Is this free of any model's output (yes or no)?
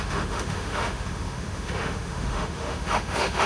no